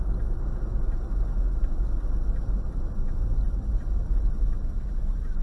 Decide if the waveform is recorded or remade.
recorded